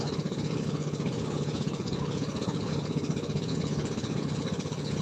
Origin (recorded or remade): remade